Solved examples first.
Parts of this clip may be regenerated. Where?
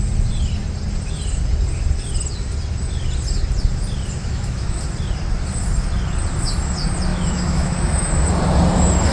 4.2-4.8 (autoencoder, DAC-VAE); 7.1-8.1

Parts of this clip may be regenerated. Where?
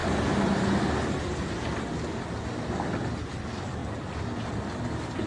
none